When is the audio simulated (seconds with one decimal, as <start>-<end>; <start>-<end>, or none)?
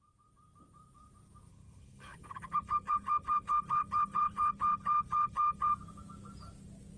1.5-5.7